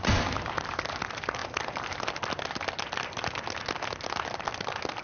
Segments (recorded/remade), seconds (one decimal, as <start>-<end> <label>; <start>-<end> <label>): 0.0-5.0 recorded